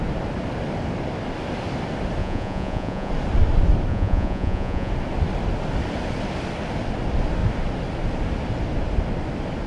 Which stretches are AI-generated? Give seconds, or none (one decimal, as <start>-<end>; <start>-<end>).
2.2-3.1; 3.9-4.9